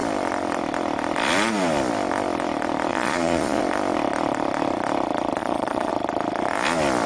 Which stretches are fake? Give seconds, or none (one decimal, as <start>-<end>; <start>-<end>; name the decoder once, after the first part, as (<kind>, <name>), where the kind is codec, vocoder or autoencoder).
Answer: 2.9-3.6 (vocoder, Vocos); 5.4-5.9